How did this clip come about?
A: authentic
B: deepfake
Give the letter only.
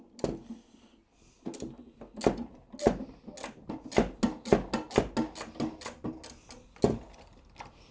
A